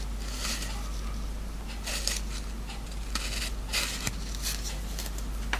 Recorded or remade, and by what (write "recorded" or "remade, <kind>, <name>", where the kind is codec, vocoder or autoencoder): recorded